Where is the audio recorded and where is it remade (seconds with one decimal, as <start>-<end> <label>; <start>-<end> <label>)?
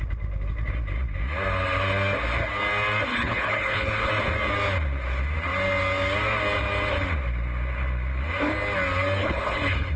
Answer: 0.0-3.1 recorded; 3.1-4.1 remade; 4.1-9.2 recorded; 9.2-10.0 remade